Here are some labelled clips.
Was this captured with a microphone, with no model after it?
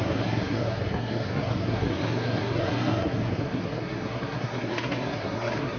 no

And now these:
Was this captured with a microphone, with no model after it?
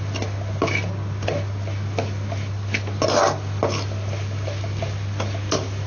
yes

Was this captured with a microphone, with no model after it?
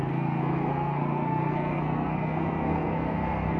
no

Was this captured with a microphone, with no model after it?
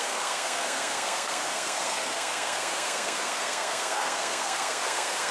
no